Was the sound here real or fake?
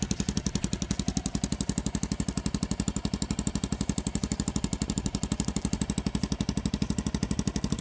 real